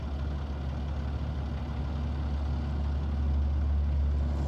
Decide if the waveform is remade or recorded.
recorded